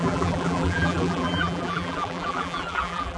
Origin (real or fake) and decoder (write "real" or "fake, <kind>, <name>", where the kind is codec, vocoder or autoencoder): fake, vocoder, BigVGAN v2